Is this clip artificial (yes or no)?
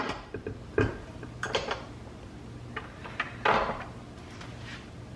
no